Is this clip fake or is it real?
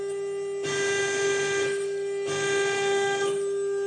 real